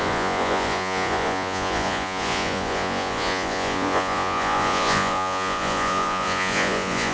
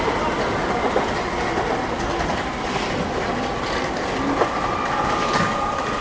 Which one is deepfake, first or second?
first